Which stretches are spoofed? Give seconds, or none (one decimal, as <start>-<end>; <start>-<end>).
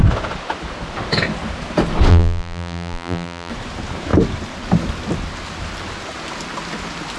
2.1-3.5